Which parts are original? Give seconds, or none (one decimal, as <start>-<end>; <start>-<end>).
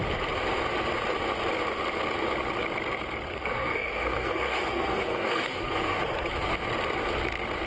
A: 0.0-3.3; 6.0-7.7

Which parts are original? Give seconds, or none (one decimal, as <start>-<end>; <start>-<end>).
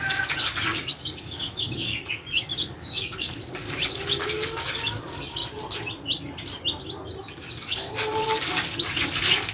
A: 5.4-7.2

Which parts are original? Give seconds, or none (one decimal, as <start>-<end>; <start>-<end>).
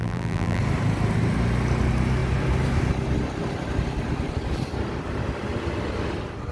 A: 0.6-6.5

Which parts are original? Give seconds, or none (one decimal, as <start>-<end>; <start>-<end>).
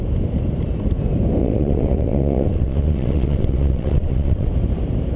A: 0.0-1.4; 4.5-5.2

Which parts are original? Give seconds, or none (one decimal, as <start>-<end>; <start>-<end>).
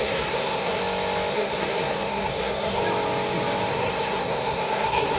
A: 0.8-1.3; 2.8-3.7